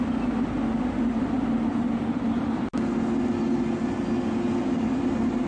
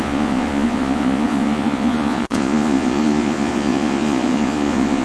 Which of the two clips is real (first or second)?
first